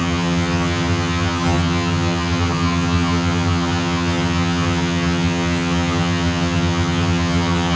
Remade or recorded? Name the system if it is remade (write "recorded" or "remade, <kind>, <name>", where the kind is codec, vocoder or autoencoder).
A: remade, vocoder, HiFi-GAN